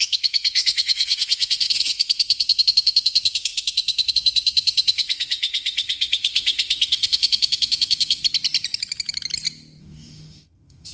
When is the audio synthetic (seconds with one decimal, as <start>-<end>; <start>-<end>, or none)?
0.0-8.2; 9.8-10.9